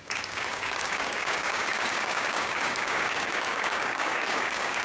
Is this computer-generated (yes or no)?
yes